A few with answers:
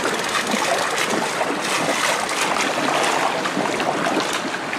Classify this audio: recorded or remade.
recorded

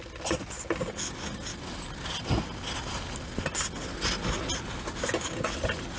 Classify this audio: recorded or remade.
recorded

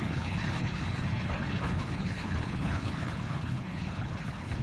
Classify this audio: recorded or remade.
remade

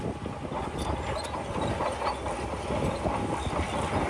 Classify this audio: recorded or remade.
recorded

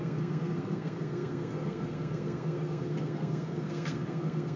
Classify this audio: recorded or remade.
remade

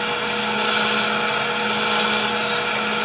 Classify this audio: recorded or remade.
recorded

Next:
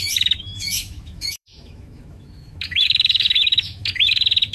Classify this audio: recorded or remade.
remade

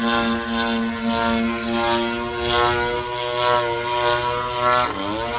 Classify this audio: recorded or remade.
recorded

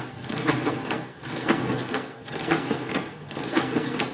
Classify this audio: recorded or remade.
remade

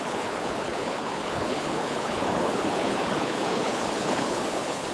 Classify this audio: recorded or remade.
remade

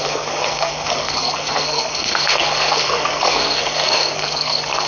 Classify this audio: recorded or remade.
remade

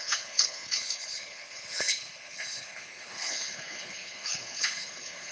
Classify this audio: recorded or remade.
remade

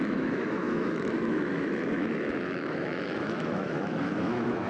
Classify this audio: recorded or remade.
remade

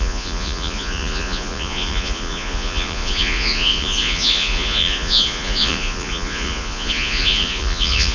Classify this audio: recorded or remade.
remade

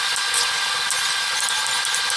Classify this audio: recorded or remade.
recorded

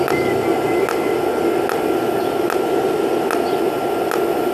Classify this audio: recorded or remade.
recorded